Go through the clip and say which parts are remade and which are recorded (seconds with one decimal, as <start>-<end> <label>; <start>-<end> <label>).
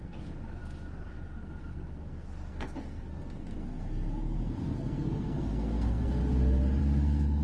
0.0-6.2 remade; 6.2-6.8 recorded; 6.8-7.4 remade